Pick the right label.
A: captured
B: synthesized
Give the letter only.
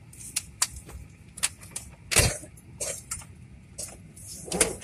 A